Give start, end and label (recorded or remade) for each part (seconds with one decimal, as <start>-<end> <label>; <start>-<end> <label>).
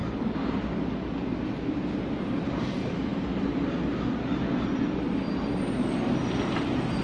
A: 0.0-7.0 recorded